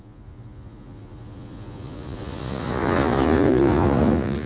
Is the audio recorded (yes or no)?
no